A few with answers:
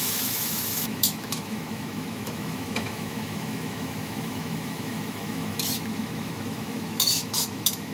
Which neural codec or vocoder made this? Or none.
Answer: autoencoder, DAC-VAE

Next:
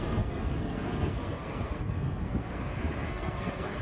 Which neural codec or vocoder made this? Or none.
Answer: codec, SNAC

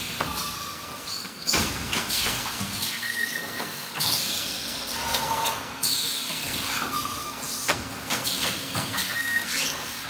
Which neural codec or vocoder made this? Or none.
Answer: codec, SNAC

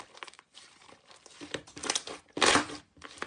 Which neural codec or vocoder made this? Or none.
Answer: vocoder, BigVGAN v2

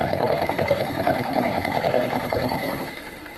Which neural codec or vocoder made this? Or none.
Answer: codec, SNAC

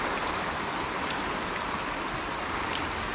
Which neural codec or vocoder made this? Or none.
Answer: none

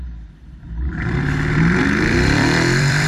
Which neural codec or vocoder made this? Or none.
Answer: vocoder, BigVGAN v2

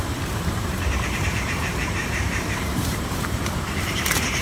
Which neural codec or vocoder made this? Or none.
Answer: vocoder, BigVGAN v2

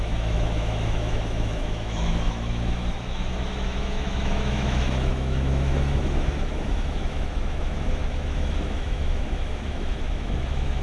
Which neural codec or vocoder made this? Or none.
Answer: autoencoder, DAC-VAE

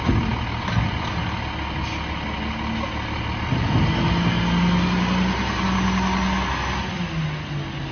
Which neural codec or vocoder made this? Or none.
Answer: none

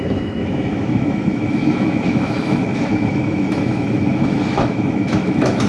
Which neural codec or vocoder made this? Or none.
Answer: autoencoder, DAC-VAE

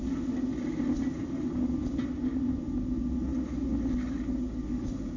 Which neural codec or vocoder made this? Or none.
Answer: none